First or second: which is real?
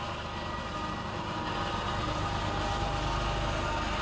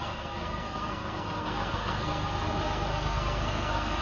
first